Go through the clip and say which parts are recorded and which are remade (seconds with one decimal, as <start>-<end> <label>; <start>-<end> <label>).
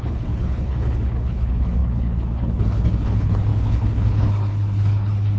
0.0-5.4 remade